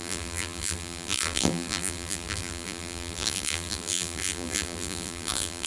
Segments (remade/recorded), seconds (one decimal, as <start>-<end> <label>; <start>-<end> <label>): 0.0-5.7 remade